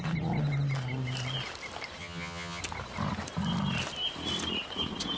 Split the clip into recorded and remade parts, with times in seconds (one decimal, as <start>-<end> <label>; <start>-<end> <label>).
0.0-2.0 recorded; 2.0-2.6 remade; 2.6-5.2 recorded